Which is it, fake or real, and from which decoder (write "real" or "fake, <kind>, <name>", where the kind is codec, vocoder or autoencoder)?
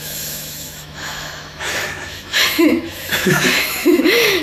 fake, autoencoder, DAC-VAE